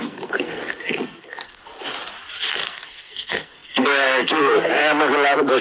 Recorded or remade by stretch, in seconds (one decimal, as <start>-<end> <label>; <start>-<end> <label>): 0.0-1.5 remade; 1.5-2.5 recorded; 2.5-4.8 remade; 4.8-5.6 recorded